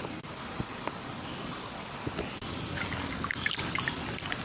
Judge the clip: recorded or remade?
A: recorded